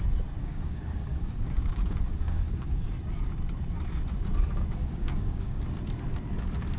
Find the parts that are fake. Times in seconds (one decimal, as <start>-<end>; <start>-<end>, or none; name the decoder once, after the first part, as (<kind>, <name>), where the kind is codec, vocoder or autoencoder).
0.4-2.9 (codec, DAC); 4.8-5.6